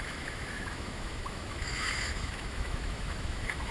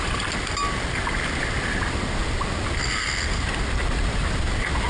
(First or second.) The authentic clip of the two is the second